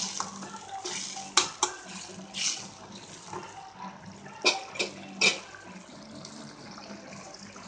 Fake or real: real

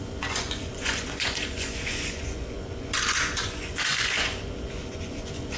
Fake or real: fake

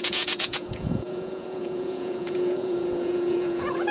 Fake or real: fake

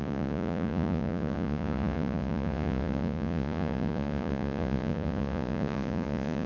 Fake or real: fake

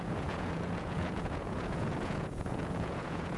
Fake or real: fake